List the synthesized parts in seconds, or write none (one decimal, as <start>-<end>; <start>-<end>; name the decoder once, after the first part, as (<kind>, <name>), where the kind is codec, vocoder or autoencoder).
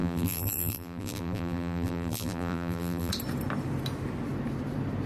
0.0-3.1 (vocoder, BigVGAN v2)